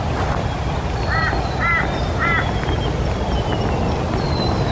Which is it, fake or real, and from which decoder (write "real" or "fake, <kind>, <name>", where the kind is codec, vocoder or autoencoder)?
real